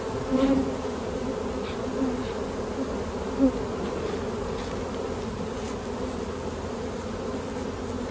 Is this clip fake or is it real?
real